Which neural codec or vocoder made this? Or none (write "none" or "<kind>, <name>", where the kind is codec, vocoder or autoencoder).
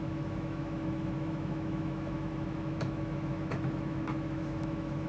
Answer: autoencoder, DAC-VAE